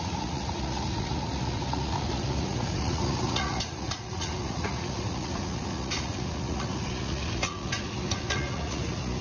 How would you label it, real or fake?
fake